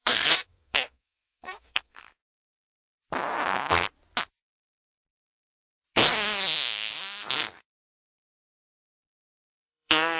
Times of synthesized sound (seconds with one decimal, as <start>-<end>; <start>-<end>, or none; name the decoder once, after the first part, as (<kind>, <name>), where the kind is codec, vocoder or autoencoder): 0.0-2.2 (codec, SNAC); 7.0-10.2